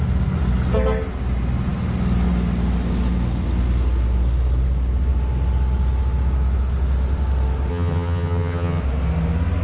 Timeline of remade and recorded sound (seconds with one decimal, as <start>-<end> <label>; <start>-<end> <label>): 0.0-7.7 recorded; 7.7-8.8 remade; 8.8-9.6 recorded